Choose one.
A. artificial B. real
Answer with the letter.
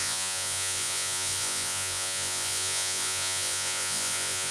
A